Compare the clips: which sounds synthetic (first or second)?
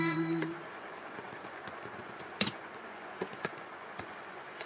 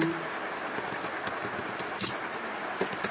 first